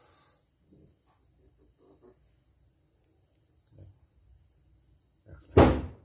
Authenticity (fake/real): real